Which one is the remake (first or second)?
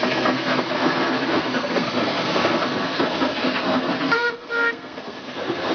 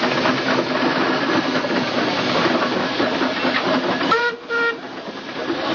first